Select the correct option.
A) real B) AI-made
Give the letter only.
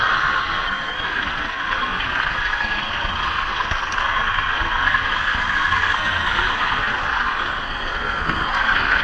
B